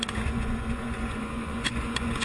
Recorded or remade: remade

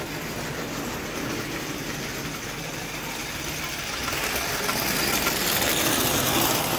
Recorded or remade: recorded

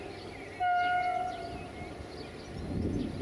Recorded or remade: recorded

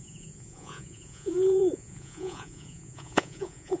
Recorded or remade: remade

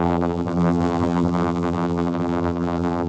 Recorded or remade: remade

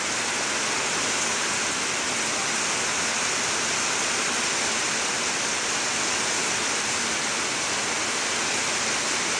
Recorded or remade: recorded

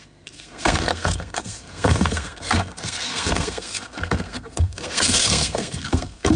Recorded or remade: remade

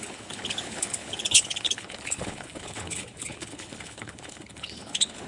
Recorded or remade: remade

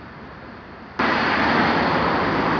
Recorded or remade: recorded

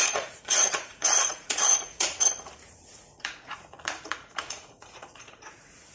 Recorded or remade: remade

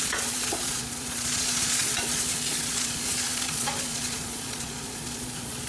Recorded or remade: remade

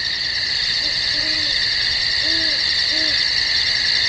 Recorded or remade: recorded